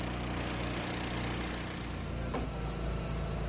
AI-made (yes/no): no